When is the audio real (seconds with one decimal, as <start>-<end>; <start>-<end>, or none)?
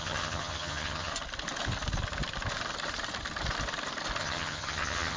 1.1-4.2